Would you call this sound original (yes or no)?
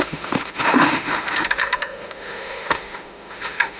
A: no